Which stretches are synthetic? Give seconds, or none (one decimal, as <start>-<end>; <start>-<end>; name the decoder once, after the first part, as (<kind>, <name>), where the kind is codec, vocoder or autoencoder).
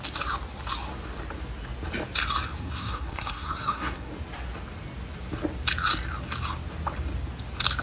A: 2.6-4.1 (codec, SNAC)